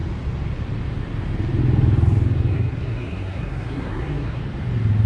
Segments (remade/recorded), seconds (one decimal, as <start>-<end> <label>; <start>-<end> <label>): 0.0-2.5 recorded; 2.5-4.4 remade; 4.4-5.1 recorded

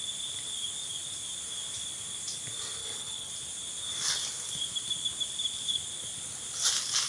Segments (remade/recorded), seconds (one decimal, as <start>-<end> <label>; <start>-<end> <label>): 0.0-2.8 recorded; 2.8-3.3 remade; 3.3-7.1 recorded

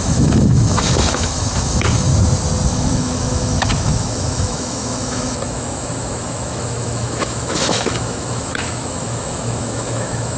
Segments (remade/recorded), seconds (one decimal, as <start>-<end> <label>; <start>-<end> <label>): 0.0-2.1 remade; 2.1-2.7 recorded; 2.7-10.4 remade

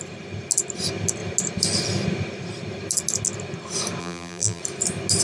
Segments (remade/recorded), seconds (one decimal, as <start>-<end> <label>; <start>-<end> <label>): 0.0-4.0 recorded; 4.0-4.6 remade; 4.6-5.2 recorded

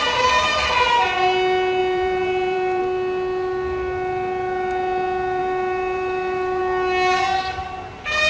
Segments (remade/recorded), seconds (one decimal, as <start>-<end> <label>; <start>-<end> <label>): 0.0-1.8 recorded; 1.8-2.8 remade; 2.8-5.4 recorded; 5.4-6.6 remade; 6.6-8.3 recorded